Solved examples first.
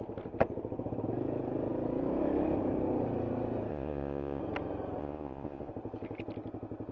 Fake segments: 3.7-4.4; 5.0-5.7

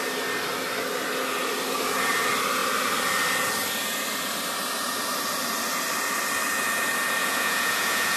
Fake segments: 7.2-8.2